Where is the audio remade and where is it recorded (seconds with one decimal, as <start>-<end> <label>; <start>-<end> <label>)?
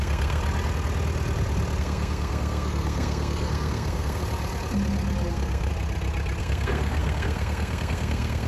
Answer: 0.0-0.4 remade; 0.4-1.8 recorded; 1.8-4.2 remade; 4.2-5.3 recorded; 5.3-5.7 remade; 5.7-6.4 recorded; 6.4-8.5 remade